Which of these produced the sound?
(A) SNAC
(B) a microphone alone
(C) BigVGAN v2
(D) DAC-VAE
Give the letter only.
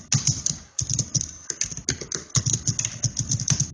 B